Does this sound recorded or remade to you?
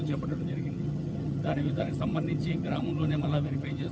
remade